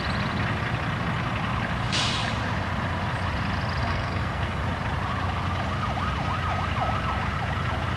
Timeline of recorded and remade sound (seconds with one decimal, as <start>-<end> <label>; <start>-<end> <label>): 0.0-3.8 recorded; 3.8-4.6 remade; 4.6-8.0 recorded